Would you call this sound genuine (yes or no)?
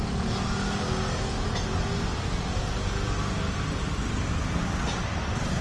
yes